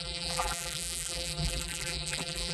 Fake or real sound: fake